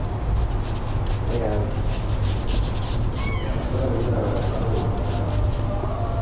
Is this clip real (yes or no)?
yes